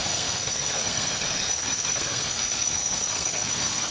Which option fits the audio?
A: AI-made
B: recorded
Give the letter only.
A